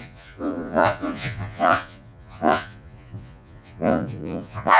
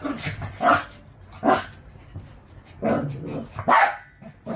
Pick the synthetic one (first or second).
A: first